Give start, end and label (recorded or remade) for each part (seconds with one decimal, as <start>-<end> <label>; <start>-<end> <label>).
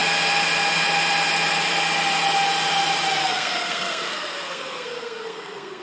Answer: 0.0-3.2 recorded; 3.2-5.8 remade